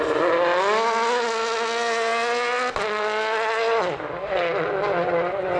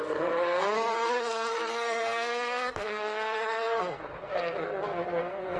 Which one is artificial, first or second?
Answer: second